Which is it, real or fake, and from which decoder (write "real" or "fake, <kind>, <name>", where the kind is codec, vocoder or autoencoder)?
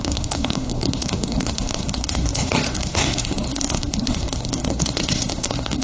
fake, codec, SNAC